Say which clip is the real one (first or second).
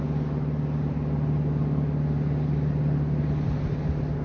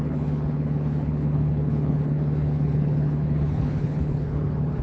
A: first